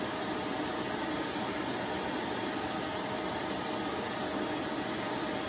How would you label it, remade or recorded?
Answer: recorded